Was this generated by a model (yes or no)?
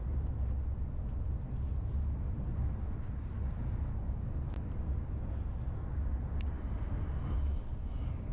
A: no